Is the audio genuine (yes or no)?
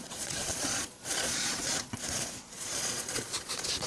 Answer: no